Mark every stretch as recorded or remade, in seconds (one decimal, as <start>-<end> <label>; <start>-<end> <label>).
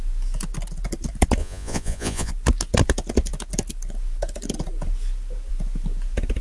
0.0-1.4 recorded; 1.4-2.3 remade; 2.3-6.4 recorded